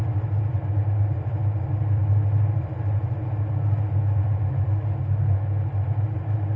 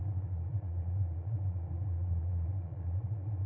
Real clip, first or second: first